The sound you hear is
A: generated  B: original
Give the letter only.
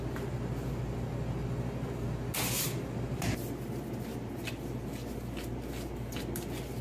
B